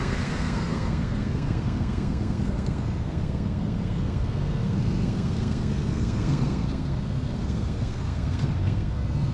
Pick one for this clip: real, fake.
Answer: fake